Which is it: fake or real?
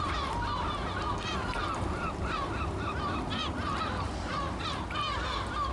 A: fake